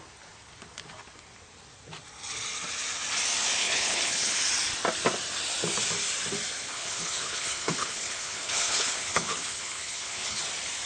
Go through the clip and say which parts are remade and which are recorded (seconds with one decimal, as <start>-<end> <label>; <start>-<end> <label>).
0.0-3.6 recorded; 3.6-4.4 remade; 4.4-6.7 recorded; 6.7-10.4 remade; 10.4-10.9 recorded

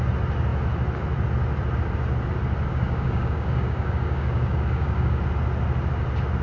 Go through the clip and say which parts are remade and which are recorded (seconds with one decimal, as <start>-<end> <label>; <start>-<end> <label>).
0.0-2.7 recorded; 2.7-5.2 remade; 5.2-6.4 recorded